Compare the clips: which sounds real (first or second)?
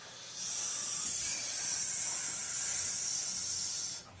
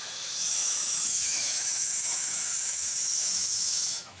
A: first